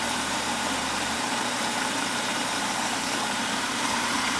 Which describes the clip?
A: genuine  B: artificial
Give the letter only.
B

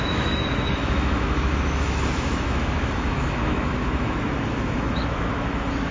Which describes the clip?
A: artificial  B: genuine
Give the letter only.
A